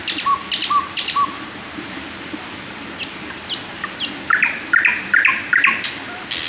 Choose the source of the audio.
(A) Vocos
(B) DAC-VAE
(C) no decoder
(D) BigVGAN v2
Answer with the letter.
C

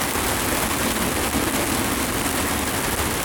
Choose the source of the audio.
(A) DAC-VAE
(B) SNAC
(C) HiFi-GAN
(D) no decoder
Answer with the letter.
D